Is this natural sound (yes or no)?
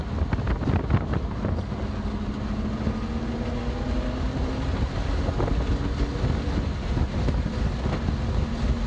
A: yes